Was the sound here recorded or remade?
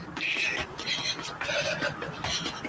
recorded